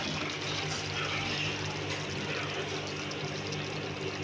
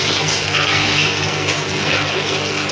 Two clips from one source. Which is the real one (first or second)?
first